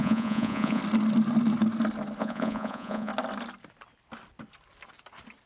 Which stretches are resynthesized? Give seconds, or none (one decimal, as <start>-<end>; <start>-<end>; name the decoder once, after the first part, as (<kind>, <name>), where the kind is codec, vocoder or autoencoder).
0.0-0.8 (vocoder, Vocos); 2.2-3.1

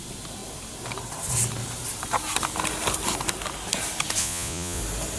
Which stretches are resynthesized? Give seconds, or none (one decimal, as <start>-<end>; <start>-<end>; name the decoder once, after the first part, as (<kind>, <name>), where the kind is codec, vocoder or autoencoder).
4.2-4.8 (vocoder, Vocos)